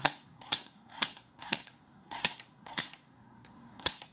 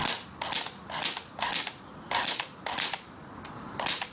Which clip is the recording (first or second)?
second